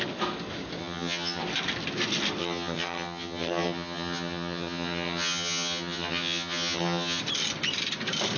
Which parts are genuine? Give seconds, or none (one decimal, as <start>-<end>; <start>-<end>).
0.0-0.8; 1.4-2.4; 7.2-8.4